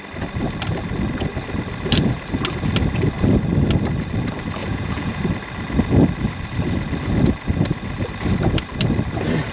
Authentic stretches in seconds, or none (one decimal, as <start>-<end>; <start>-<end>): 0.0-4.6; 5.2-9.5